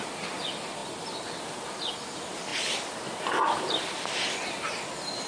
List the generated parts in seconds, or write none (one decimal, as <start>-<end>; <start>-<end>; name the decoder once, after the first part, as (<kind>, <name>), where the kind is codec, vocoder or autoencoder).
none